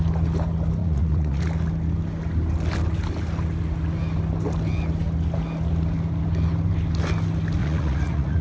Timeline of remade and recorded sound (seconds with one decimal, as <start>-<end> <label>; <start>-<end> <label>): 0.0-0.8 recorded; 0.8-1.4 remade; 1.4-7.6 recorded; 7.6-8.4 remade